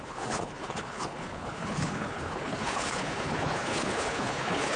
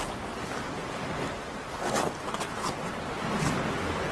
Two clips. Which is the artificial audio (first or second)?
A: first